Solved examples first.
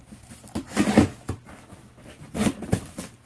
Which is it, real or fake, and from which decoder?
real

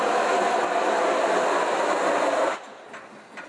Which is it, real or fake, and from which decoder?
real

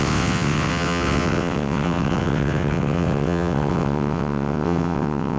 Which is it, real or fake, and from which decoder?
fake, vocoder, WaveNeXt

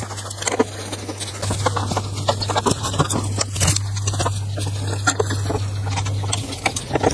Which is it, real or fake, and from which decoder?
real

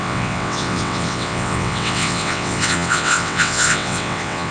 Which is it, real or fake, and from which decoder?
fake, vocoder, WaveNeXt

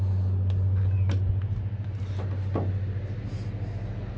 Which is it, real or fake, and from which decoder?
real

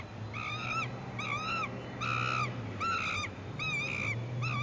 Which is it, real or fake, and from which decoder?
real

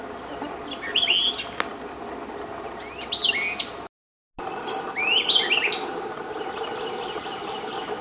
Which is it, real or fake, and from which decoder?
real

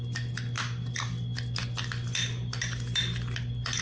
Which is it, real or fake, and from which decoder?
real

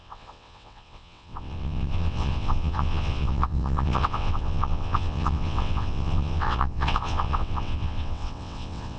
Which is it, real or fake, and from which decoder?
fake, vocoder, WaveNeXt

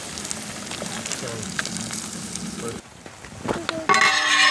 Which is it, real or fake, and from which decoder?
real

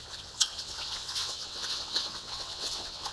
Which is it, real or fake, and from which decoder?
fake, vocoder, WaveNeXt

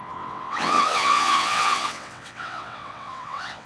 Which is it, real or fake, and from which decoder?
fake, vocoder, WaveNeXt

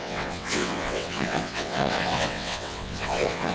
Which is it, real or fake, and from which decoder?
fake, vocoder, WaveNeXt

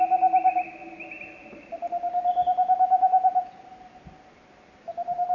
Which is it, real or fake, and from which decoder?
real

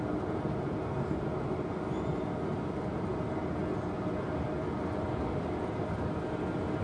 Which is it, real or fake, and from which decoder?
real